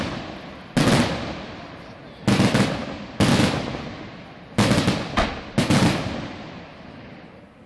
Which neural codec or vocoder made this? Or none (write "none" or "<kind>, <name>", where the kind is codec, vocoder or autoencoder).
none